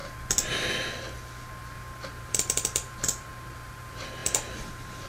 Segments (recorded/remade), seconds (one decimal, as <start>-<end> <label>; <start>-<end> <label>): 0.0-2.2 recorded; 2.2-3.3 remade; 3.3-3.8 recorded; 3.8-5.1 remade